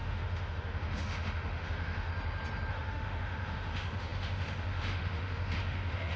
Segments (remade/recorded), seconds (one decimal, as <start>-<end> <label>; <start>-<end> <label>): 0.0-2.1 remade; 2.1-2.7 recorded; 2.7-6.2 remade